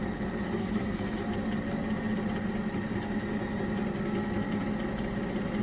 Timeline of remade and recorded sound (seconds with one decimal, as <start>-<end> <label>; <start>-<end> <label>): 0.0-0.6 recorded; 0.6-1.2 remade; 1.2-5.6 recorded